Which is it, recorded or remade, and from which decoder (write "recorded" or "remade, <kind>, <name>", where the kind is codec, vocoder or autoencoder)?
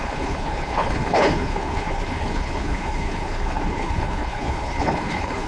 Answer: remade, codec, HILCodec